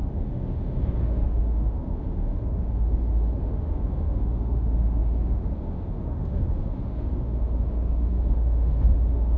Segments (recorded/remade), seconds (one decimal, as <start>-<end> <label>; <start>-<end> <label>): 0.0-9.4 remade